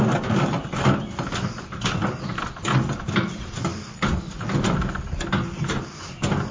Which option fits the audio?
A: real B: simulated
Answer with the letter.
A